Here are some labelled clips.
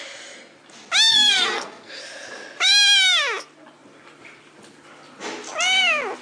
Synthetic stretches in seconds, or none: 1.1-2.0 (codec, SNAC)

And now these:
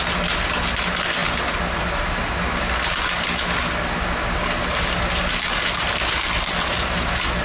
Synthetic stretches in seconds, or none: none

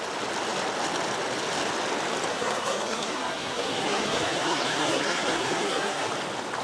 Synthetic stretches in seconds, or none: 2.3-6.1 (codec, SNAC)

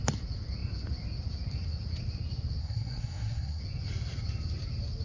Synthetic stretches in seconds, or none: 2.6-3.6 (codec, SNAC)

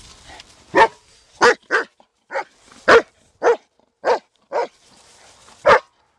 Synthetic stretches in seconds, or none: none

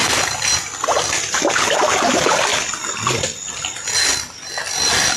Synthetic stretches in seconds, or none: none

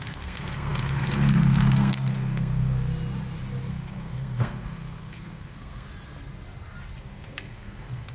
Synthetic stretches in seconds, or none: 0.0-2.9 (codec, SNAC); 3.7-5.9; 7.0-8.1

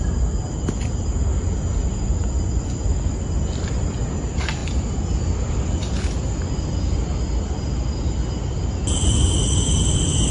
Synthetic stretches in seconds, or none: none